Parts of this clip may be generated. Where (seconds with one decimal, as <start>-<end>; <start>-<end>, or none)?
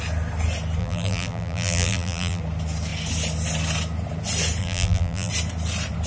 0.8-2.4; 4.6-5.3